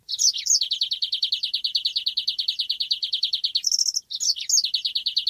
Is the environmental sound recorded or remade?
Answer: recorded